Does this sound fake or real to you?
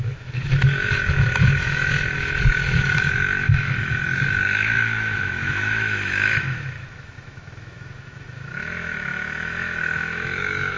fake